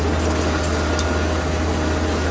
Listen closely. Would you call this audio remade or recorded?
recorded